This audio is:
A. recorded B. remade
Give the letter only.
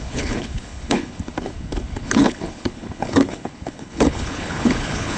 B